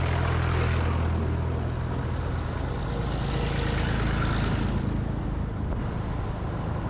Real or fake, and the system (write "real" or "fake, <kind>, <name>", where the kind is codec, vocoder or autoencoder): real